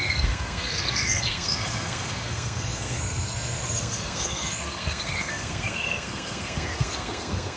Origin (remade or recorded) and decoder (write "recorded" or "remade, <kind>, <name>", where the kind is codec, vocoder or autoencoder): remade, codec, SNAC